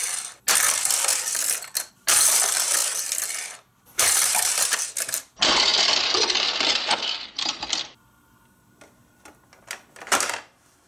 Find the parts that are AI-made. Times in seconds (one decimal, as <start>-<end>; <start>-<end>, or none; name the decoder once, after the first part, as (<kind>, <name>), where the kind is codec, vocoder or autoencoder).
1.9-2.8 (vocoder, BigVGAN v2); 3.8-5.7; 9.9-10.9